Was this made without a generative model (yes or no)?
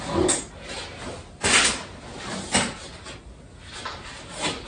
yes